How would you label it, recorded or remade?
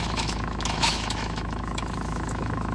remade